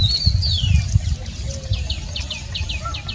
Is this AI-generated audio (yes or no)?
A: no